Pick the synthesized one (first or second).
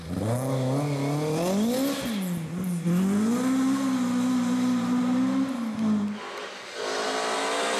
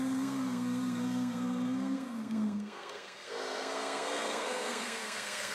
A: second